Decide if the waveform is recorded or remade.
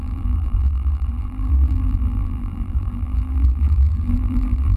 remade